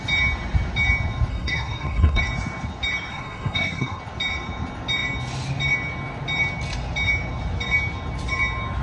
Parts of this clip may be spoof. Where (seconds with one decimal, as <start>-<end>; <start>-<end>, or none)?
1.3-2.2; 3.1-4.0